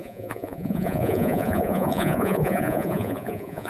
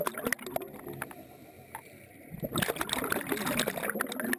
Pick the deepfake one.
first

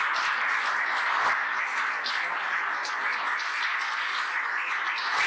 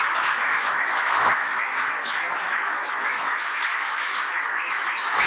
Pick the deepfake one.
second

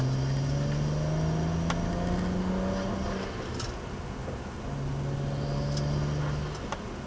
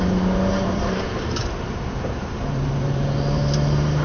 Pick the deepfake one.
second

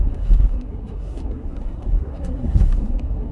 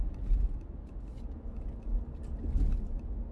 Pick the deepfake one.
first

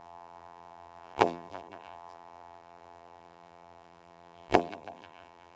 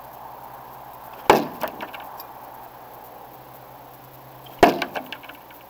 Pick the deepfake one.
first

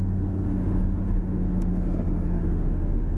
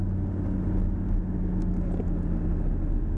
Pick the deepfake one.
first